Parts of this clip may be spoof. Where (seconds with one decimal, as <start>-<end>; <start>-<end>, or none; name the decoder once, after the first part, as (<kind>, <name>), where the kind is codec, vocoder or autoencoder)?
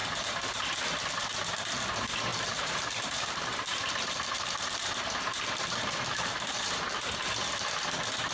0.0-0.7 (vocoder, BigVGAN v2); 2.3-7.3